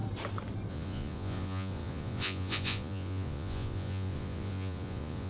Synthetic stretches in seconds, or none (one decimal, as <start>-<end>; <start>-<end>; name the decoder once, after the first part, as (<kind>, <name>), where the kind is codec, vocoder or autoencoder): 0.7-5.3 (vocoder, Vocos)